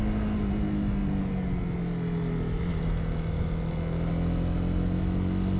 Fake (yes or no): no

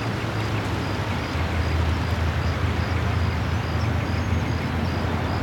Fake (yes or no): no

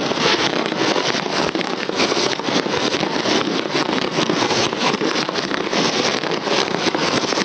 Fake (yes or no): yes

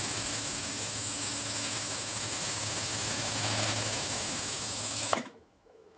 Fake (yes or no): yes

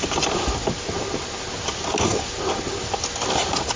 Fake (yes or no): no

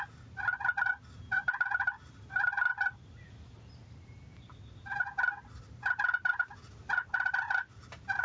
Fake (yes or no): no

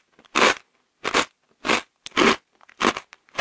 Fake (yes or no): no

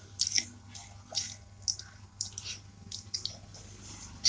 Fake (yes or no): no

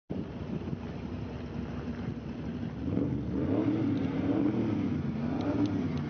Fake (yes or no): no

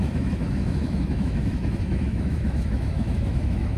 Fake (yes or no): yes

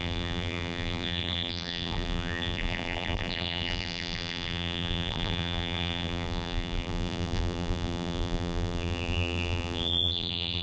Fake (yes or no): yes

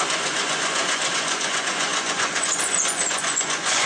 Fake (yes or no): yes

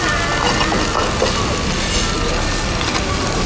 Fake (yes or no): no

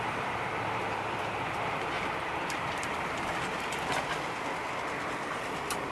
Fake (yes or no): yes